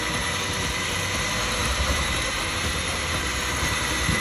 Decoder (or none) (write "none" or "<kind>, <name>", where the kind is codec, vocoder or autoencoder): vocoder, BigVGAN v2